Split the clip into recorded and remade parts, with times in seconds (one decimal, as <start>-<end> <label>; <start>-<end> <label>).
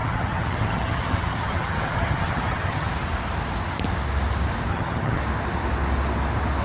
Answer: 0.0-2.9 remade; 2.9-4.7 recorded; 4.7-5.2 remade; 5.2-6.6 recorded